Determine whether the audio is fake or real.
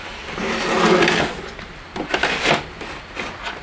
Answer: real